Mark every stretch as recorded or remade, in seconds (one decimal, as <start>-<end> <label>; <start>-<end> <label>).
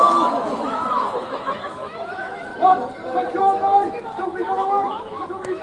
0.0-2.5 remade; 2.5-3.4 recorded; 3.4-5.6 remade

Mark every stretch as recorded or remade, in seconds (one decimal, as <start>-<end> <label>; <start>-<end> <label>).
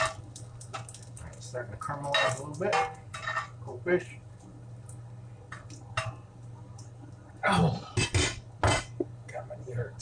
0.0-10.0 recorded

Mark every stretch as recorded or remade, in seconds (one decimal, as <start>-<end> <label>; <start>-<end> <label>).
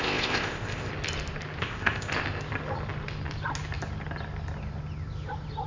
0.0-0.9 remade; 0.9-1.6 recorded; 1.6-2.1 remade; 2.1-5.7 recorded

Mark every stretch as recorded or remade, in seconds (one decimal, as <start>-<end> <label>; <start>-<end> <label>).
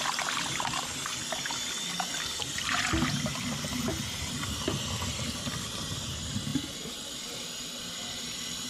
0.0-8.7 recorded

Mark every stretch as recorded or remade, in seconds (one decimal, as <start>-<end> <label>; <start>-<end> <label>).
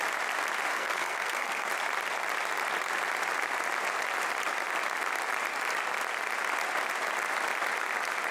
0.0-0.7 recorded; 0.7-1.7 remade; 1.7-8.3 recorded